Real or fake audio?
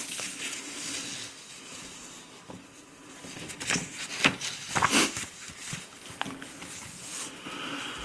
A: real